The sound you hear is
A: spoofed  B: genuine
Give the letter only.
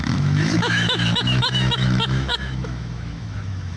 A